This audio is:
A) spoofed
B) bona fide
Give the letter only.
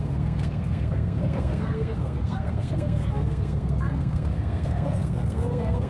A